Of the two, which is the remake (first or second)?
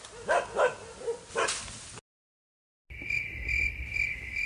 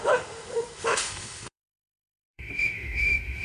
second